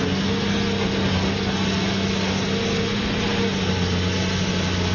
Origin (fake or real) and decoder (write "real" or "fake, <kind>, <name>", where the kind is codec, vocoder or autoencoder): real